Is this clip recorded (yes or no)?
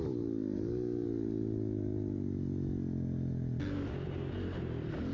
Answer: yes